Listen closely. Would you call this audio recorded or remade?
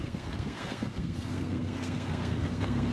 remade